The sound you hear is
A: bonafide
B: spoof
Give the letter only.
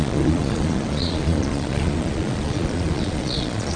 B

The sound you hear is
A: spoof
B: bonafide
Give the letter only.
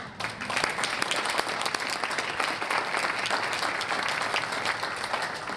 B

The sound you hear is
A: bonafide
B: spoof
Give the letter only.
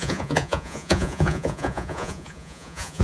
B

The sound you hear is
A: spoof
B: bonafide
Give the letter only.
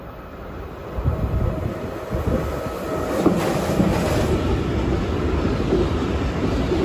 B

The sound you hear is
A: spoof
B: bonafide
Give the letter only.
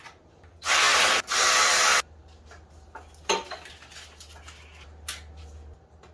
B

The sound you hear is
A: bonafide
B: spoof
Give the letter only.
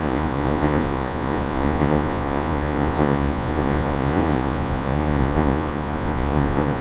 B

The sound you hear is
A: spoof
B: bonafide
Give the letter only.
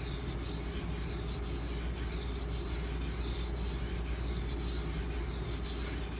B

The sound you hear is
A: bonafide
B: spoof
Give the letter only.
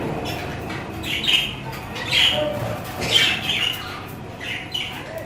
A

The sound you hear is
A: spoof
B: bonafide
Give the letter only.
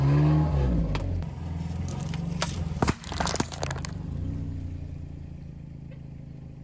B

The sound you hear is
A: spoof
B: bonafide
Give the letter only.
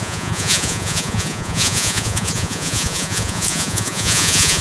A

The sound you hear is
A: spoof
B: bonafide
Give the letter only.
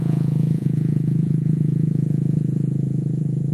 A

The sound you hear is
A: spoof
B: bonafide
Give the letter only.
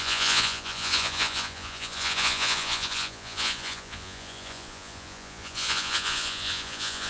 A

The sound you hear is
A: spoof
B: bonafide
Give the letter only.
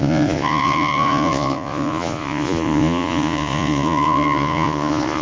A